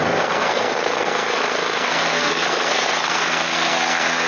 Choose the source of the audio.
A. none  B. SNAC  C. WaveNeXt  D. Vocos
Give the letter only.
B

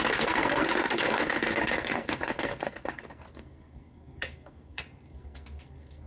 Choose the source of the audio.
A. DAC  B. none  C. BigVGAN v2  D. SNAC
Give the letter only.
D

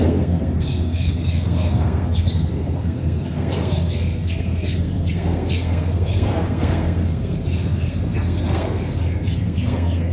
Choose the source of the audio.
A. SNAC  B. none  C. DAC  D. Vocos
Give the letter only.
A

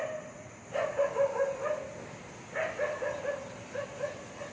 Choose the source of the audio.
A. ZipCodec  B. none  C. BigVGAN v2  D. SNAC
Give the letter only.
B